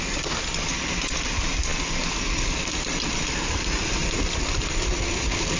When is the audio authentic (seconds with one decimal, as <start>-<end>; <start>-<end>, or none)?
0.0-5.6